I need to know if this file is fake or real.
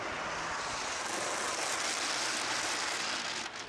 real